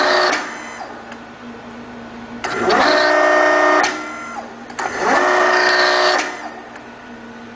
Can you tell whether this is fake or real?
real